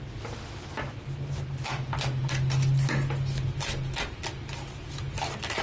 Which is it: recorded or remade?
recorded